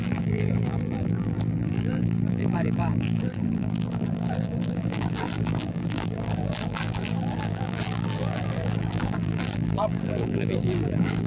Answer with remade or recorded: remade